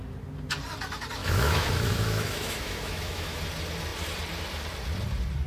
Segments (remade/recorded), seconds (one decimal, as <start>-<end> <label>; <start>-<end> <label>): 0.0-1.2 recorded; 1.2-3.4 remade; 3.4-5.5 recorded